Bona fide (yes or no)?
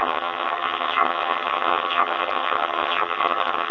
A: no